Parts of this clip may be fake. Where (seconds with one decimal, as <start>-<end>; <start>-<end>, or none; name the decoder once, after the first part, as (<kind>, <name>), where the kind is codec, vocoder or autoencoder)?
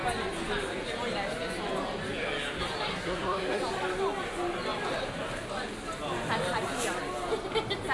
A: 2.9-3.6 (codec, SNAC)